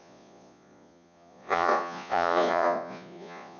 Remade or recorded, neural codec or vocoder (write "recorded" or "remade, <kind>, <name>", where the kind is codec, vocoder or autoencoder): remade, vocoder, Vocos